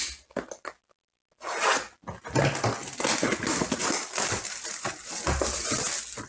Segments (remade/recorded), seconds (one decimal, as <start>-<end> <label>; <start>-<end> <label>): 0.0-6.3 recorded

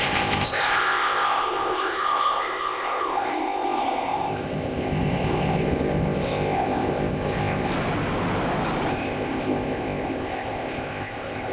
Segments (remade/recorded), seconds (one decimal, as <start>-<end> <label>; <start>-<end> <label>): 0.0-7.7 remade; 7.7-8.9 recorded; 8.9-11.5 remade

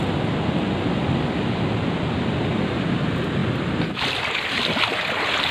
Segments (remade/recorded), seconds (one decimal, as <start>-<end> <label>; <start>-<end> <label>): 0.0-5.5 recorded

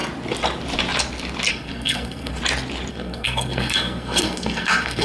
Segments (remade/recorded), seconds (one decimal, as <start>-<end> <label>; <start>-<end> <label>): 0.0-1.5 recorded; 1.5-2.4 remade; 2.4-2.9 recorded; 2.9-5.0 remade

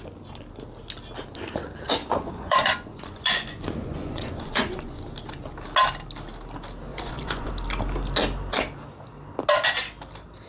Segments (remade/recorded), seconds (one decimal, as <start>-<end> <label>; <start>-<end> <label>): 0.0-2.0 recorded; 2.0-5.0 remade; 5.0-6.9 recorded; 6.9-7.5 remade; 7.5-10.5 recorded

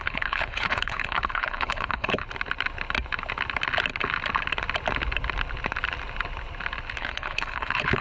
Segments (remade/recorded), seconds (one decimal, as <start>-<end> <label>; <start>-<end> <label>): 0.0-2.2 remade; 2.2-7.0 recorded; 7.0-8.0 remade

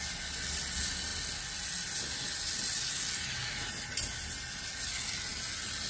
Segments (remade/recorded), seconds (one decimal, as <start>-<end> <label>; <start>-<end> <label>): 0.0-5.9 recorded